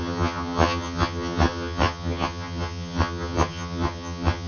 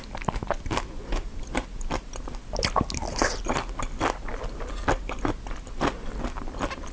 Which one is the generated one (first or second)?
first